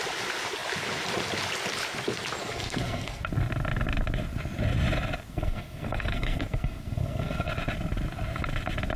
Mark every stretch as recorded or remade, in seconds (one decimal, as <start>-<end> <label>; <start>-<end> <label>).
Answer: 0.0-2.4 recorded; 2.4-3.2 remade; 3.2-5.3 recorded; 5.3-7.5 remade; 7.5-9.0 recorded